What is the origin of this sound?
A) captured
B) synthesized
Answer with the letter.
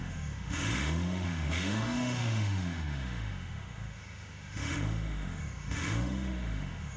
B